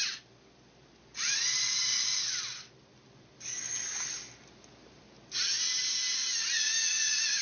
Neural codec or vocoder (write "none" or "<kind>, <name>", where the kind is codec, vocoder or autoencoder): none